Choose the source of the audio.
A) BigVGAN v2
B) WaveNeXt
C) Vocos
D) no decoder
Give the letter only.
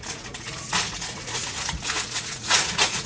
C